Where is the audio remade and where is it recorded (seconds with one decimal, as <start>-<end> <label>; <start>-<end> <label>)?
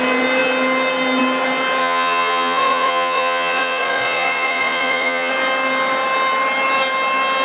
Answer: 0.0-1.8 recorded; 1.8-5.3 remade; 5.3-7.4 recorded